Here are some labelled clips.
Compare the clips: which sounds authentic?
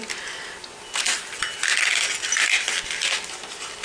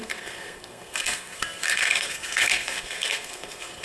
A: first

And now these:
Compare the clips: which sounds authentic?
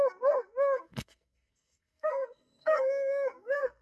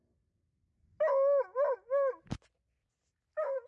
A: second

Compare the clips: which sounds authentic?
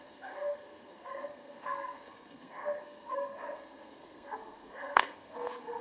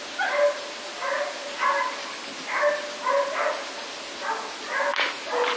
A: second